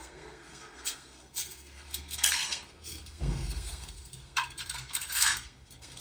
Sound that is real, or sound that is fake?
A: fake